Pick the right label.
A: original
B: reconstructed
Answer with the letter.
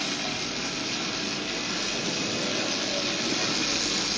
A